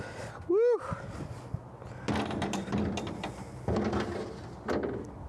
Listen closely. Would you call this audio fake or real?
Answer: real